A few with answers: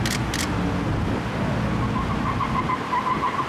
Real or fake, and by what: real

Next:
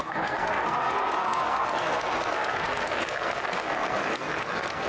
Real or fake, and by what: fake, codec, SNAC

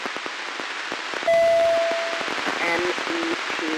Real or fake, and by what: real